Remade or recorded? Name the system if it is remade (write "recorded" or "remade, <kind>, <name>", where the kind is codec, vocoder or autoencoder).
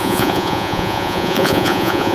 remade, vocoder, Vocos